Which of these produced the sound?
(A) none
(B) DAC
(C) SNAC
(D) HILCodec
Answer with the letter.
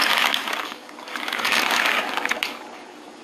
B